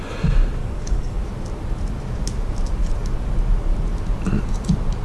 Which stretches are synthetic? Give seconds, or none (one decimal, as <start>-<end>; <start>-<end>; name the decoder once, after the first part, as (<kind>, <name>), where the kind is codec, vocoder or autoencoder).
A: 0.6-1.2 (codec, DAC)

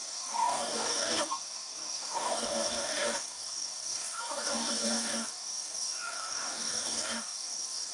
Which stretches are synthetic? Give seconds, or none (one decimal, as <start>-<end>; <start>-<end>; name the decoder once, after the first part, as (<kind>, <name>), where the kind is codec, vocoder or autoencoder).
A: 0.0-7.9 (codec, DAC)

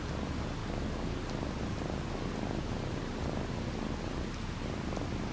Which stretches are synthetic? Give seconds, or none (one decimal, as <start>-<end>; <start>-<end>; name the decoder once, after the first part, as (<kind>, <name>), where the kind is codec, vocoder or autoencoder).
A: 0.6-1.2 (codec, DAC)

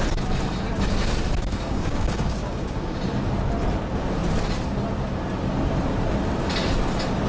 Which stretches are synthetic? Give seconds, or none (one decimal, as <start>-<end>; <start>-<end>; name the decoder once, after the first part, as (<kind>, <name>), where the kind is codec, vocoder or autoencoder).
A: 1.5-3.0 (codec, DAC)